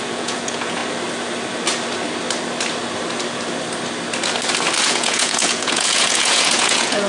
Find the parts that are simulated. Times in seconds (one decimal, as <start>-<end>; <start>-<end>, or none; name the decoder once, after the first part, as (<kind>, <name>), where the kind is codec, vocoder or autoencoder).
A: 0.0-0.8 (vocoder, Vocos); 4.8-7.1